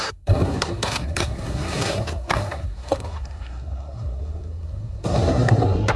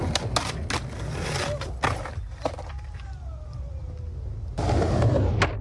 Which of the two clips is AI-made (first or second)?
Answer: first